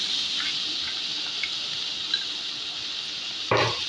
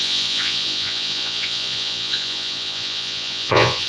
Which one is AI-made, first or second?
second